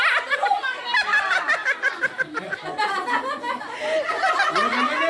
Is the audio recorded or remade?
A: recorded